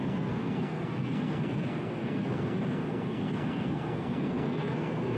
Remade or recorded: remade